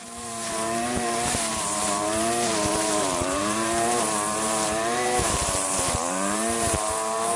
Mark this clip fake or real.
fake